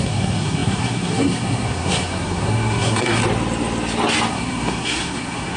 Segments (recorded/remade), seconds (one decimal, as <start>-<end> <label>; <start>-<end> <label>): 0.0-3.2 remade; 3.2-4.3 recorded; 4.3-5.6 remade